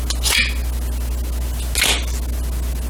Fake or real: real